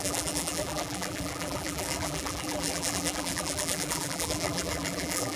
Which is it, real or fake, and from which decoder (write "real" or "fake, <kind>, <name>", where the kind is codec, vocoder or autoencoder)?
fake, vocoder, BigVGAN v2